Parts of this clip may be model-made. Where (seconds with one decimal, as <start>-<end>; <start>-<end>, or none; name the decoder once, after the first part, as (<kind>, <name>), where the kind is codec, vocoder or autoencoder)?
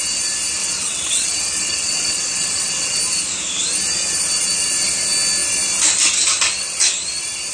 0.6-3.0 (vocoder, WaveNeXt)